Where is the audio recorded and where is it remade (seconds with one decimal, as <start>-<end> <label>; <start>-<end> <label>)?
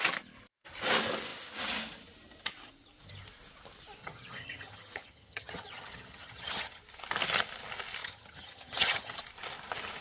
0.0-4.0 recorded; 4.0-6.8 remade; 6.8-8.0 recorded; 8.0-9.2 remade; 9.2-10.0 recorded